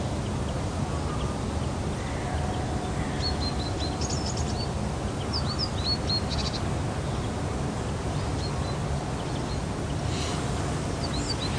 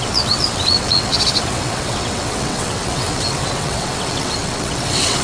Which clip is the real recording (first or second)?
first